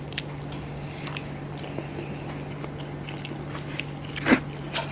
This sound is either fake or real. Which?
real